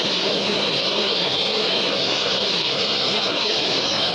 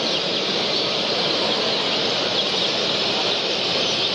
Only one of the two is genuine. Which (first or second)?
second